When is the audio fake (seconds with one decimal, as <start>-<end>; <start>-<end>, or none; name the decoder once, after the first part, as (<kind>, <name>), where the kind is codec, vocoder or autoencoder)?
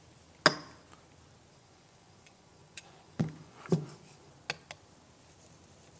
1.5-4.3 (vocoder, Vocos)